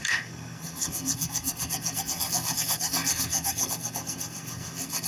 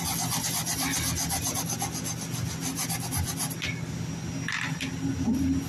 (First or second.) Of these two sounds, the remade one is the first